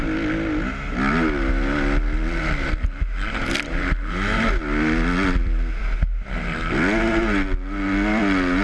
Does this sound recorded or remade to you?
recorded